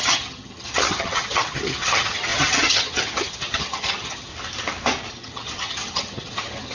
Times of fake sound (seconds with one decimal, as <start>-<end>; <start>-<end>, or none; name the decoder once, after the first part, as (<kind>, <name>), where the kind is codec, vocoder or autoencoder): 0.0-4.3 (vocoder, HiFi-GAN); 5.1-6.7